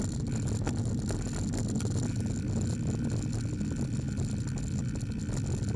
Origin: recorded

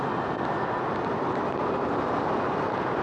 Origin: recorded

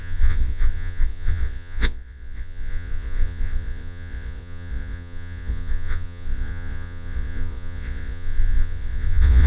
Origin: remade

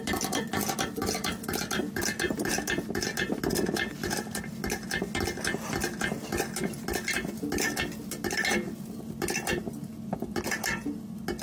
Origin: recorded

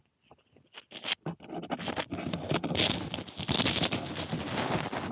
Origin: recorded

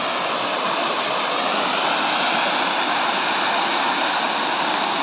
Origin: recorded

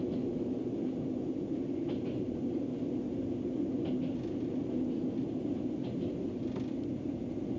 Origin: recorded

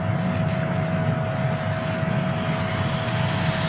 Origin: recorded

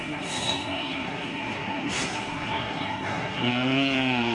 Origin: remade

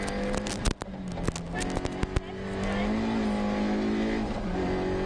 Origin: recorded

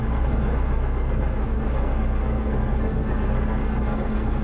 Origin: remade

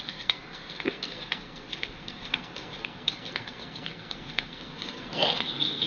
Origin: remade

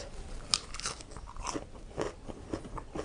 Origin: recorded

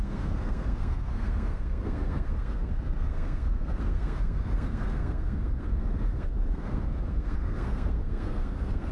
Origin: remade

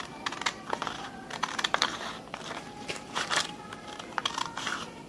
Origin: remade